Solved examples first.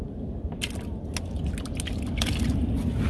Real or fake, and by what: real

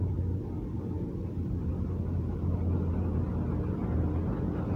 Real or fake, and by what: real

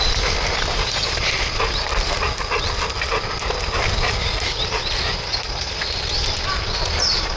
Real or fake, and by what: real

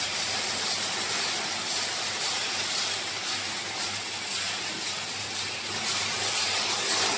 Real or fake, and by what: real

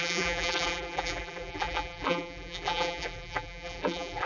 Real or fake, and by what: fake, vocoder, BigVGAN v2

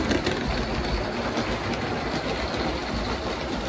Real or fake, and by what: real